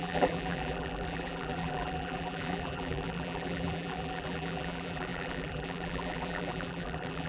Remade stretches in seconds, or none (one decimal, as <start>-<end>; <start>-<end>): 0.0-7.3